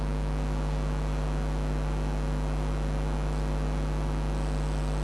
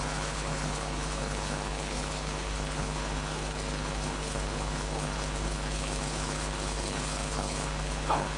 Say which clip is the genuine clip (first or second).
first